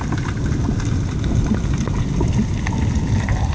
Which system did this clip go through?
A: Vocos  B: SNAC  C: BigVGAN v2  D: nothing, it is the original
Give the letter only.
D